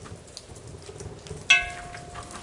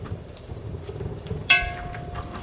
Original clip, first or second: first